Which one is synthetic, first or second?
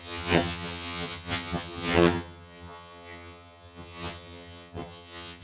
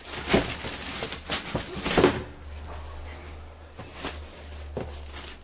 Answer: first